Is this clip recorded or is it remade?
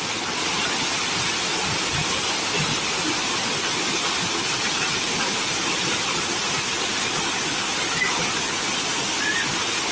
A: recorded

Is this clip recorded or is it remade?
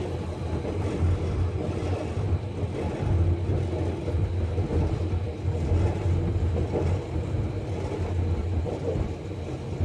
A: recorded